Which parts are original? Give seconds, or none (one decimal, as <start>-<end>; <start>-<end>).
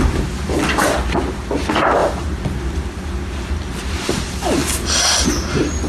0.0-5.9